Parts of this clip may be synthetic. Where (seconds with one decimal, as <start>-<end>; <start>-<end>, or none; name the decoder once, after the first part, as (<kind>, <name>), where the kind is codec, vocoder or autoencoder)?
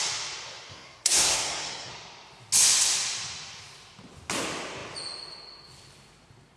0.7-1.9 (codec, SNAC)